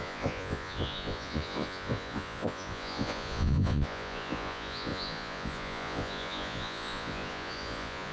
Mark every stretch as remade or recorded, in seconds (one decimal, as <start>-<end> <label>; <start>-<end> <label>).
0.0-8.1 remade